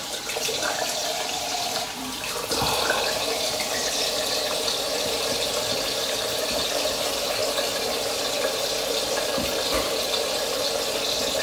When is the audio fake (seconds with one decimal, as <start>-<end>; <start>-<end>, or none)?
0.0-3.8; 4.5-7.4; 8.1-11.4